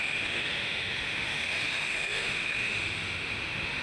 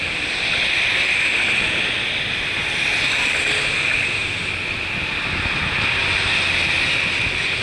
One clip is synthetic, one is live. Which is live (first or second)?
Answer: second